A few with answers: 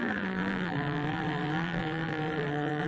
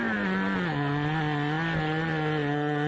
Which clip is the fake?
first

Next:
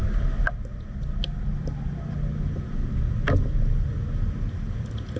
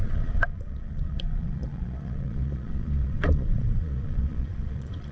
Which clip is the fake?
second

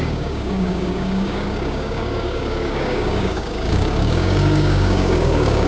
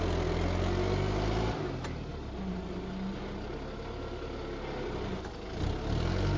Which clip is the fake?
first